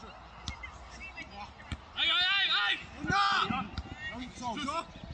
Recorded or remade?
recorded